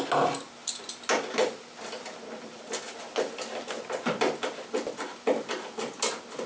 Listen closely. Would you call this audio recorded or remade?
recorded